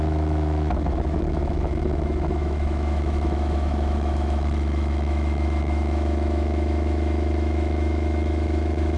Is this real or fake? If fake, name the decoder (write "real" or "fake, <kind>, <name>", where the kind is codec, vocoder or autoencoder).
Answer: fake, autoencoder, DAC-VAE